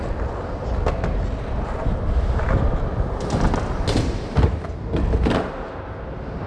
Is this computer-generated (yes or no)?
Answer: no